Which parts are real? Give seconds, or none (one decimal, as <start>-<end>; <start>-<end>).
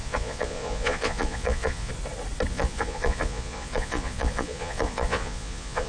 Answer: 1.9-2.5